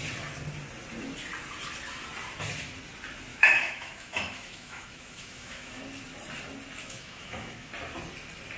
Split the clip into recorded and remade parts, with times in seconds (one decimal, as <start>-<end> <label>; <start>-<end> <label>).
0.0-3.3 recorded; 3.3-5.8 remade; 5.8-6.8 recorded; 6.8-7.7 remade; 7.7-8.6 recorded